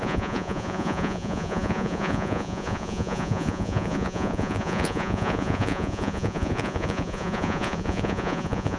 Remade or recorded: remade